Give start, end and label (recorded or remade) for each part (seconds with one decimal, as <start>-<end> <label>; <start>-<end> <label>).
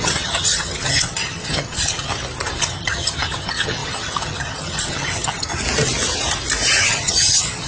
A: 0.0-2.1 remade; 2.1-2.6 recorded; 2.6-5.6 remade; 5.6-6.8 recorded; 6.8-7.7 remade